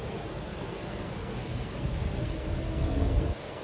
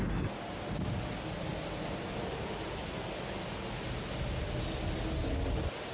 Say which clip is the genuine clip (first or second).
second